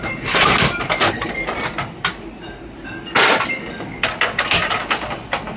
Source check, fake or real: real